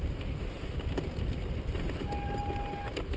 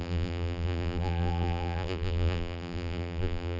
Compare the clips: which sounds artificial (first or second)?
second